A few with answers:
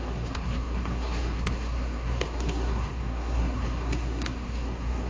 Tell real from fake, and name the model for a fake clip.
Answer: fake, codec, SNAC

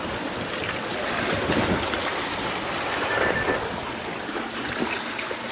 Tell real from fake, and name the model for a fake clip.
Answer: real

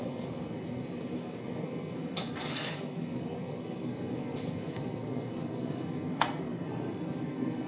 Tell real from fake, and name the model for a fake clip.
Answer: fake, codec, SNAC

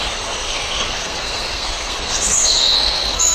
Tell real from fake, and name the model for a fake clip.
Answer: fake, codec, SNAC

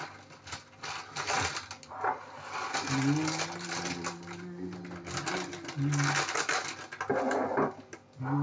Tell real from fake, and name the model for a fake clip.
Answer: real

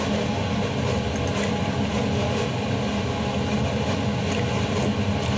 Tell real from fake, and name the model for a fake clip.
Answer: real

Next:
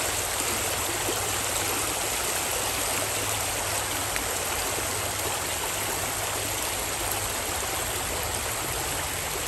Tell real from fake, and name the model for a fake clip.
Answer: real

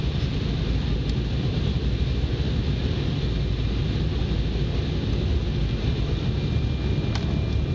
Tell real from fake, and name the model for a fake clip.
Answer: real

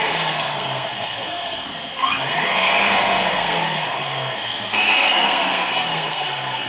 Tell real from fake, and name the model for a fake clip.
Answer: fake, codec, SNAC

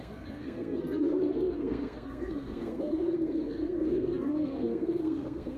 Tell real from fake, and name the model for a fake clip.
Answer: fake, codec, SNAC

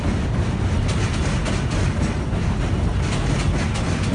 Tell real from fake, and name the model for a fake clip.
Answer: real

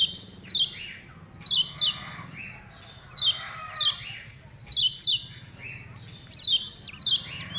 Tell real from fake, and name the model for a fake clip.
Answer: real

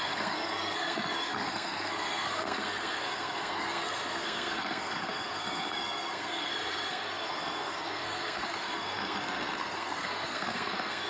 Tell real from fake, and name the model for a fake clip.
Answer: fake, codec, SNAC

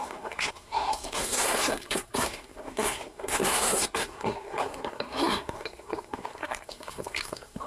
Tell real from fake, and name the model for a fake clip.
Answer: fake, codec, SNAC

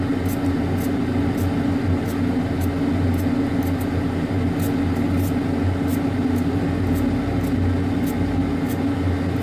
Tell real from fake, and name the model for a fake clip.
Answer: real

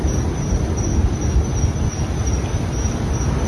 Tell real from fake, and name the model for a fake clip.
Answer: real